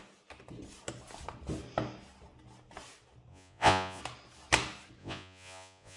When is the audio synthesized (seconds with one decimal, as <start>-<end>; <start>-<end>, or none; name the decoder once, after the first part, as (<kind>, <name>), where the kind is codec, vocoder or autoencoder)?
3.3-4.0 (vocoder, Vocos); 5.0-6.0